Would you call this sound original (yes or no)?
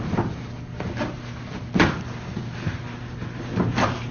yes